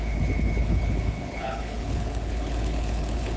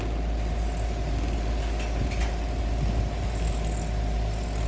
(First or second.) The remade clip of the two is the first